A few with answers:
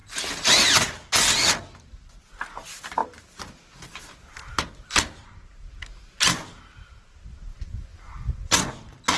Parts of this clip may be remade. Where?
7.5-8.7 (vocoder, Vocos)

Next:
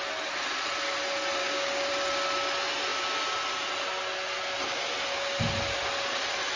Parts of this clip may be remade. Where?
1.4-1.9 (codec, DAC)

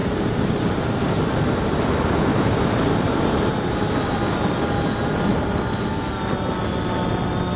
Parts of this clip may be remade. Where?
0.0-1.2 (vocoder, BigVGAN v2); 2.3-4.0; 5.3-5.9